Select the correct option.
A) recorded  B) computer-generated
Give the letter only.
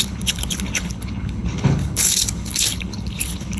B